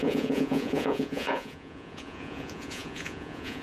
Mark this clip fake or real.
fake